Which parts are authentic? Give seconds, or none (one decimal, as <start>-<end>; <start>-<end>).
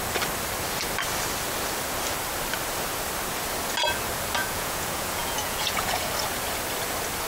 0.0-4.4; 6.1-7.3